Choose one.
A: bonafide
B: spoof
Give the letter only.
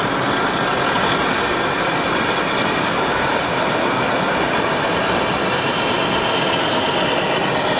A